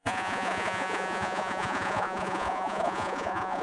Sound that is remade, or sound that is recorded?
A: remade